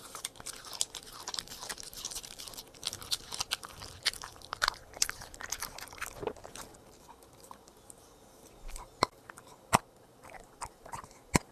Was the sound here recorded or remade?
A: remade